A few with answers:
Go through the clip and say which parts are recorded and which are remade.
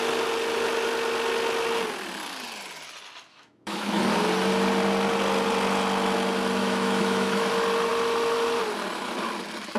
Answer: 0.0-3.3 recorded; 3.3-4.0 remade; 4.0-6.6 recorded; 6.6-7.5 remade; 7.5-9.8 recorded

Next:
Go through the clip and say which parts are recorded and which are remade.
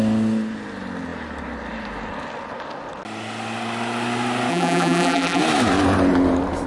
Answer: 0.0-4.5 recorded; 4.5-5.4 remade; 5.4-6.7 recorded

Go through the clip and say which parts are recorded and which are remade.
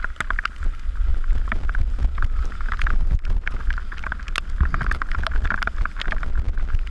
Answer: 0.0-6.9 recorded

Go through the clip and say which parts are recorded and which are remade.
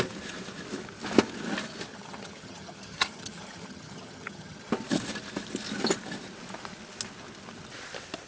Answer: 0.0-1.9 recorded; 1.9-4.7 remade; 4.7-8.3 recorded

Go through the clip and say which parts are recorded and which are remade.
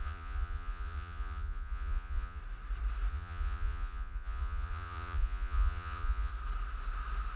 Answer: 0.0-2.4 remade; 2.4-3.1 recorded; 3.1-6.3 remade; 6.3-7.4 recorded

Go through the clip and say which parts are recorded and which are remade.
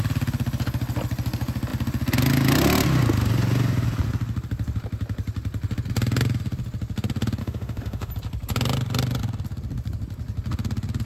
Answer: 0.0-7.4 recorded; 7.4-8.1 remade; 8.1-11.1 recorded